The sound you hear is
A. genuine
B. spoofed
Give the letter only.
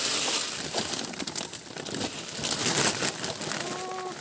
A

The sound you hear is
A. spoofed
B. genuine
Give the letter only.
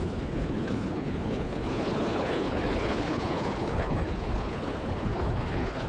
A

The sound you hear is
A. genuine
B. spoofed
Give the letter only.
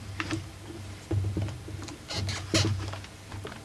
A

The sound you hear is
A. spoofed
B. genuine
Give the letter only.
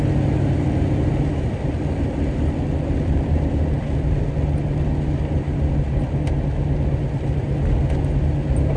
B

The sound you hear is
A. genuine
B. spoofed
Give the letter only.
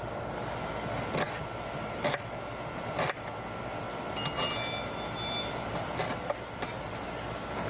A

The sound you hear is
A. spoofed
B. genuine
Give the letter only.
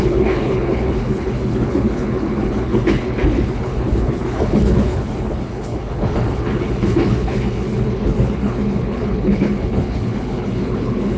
A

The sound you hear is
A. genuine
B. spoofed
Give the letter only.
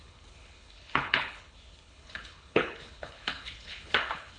B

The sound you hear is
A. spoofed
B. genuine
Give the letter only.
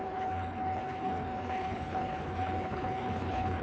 A